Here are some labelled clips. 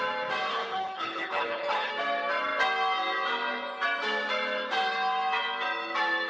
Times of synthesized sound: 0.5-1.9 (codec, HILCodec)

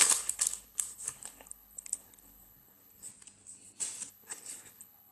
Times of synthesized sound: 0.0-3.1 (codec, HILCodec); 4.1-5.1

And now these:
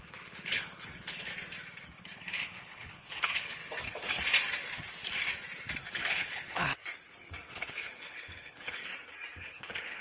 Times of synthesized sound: 0.0-1.3 (codec, HILCodec); 2.0-3.6; 5.9-6.8; 7.5-8.9; 9.4-10.0

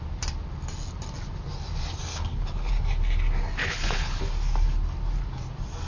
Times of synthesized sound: 2.1-2.7 (codec, HILCodec); 3.6-4.2

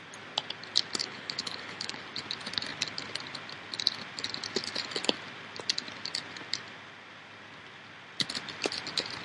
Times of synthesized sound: 1.0-2.0 (codec, HILCodec)

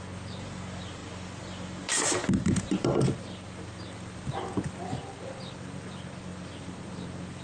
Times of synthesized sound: none

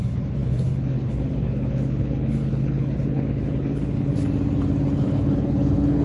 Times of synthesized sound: 0.0-4.1 (codec, HILCodec); 5.0-6.0